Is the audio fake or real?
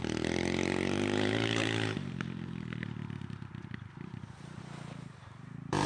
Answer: fake